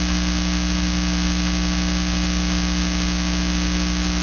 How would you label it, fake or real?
real